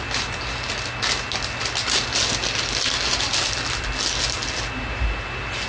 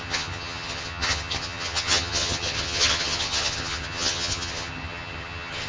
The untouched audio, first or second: first